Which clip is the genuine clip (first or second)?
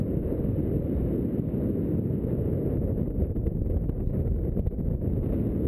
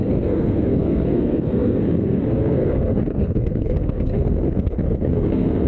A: first